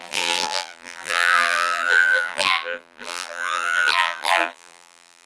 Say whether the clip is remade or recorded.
remade